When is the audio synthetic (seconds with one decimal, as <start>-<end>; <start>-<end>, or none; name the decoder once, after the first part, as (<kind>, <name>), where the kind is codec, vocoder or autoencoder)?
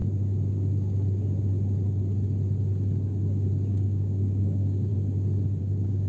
3.7-4.9 (codec, DAC); 5.6-6.1